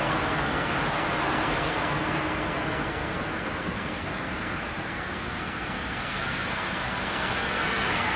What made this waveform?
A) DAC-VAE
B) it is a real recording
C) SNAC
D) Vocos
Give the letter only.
C